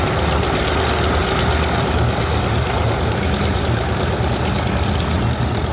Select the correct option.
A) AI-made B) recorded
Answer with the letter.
B